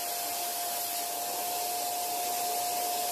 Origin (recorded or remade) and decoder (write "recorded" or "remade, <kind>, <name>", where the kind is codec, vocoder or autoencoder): recorded